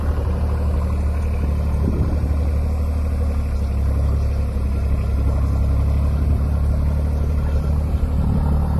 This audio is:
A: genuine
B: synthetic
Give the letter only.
A